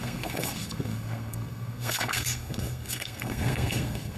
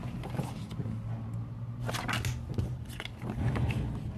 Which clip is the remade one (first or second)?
first